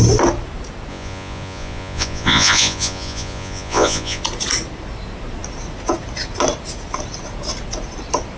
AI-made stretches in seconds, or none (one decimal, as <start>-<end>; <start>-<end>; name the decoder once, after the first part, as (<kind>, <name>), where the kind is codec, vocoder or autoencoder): 0.9-4.2 (vocoder, Vocos)